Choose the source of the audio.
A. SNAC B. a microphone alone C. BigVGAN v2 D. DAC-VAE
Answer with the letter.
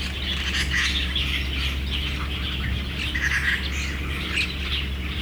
B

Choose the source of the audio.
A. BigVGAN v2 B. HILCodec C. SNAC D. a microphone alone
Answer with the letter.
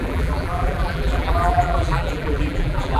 A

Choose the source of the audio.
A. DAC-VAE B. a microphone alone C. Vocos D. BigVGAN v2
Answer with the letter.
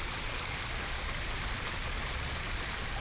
B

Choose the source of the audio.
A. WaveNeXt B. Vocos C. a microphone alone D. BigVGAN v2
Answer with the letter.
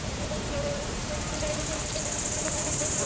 D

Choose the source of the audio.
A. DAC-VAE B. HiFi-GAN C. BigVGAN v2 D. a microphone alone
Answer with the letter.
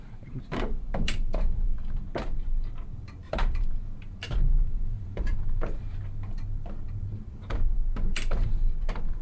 C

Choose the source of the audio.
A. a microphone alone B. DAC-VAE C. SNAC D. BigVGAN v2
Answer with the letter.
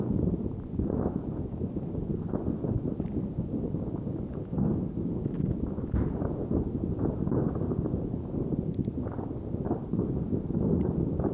A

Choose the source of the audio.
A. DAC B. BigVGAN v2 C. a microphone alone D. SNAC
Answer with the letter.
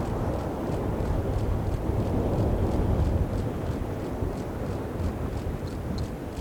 C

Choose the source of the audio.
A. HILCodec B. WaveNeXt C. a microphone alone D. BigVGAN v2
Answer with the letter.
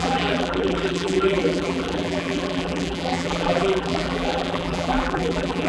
D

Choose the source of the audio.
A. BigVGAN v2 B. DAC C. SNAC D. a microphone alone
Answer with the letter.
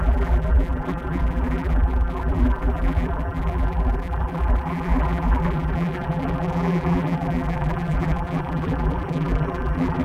A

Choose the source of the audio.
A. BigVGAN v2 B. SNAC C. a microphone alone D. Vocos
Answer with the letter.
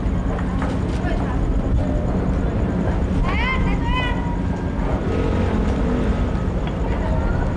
C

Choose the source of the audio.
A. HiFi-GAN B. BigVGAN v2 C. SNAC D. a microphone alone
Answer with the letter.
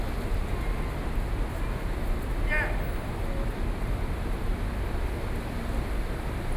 D